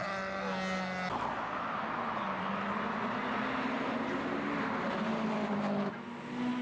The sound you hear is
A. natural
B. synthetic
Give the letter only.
A